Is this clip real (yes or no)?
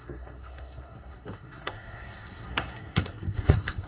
no